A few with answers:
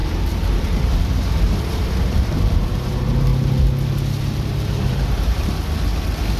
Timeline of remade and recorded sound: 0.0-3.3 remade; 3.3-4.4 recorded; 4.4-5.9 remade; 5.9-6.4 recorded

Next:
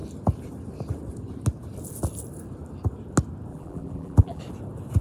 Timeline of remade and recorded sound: 0.0-3.5 recorded; 3.5-4.4 remade; 4.4-5.0 recorded

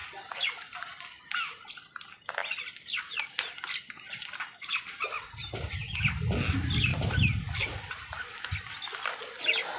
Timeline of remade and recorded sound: 0.0-1.2 remade; 1.2-6.9 recorded; 6.9-8.2 remade; 8.2-8.9 recorded; 8.9-9.4 remade; 9.4-9.8 recorded

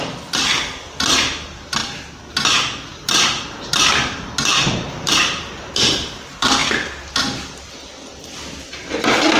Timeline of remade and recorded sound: 0.0-1.8 recorded; 1.8-2.3 remade; 2.3-2.9 recorded; 2.9-5.7 remade; 5.7-9.4 recorded